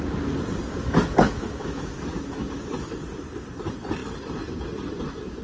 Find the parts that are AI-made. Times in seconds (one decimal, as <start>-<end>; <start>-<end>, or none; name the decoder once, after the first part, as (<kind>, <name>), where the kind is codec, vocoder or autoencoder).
0.8-2.6 (autoencoder, DAC-VAE)

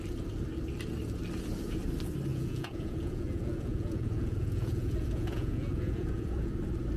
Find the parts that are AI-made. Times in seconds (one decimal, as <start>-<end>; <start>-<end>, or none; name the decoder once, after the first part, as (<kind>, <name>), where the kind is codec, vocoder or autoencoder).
2.3-6.5 (vocoder, Vocos)

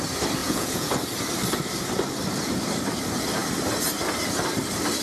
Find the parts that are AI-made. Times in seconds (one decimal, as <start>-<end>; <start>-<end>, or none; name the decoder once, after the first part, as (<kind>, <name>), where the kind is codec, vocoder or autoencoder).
0.4-0.9 (vocoder, Vocos)